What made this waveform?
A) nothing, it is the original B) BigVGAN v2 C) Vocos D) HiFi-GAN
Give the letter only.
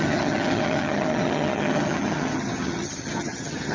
D